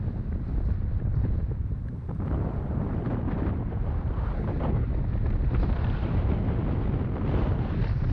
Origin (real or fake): real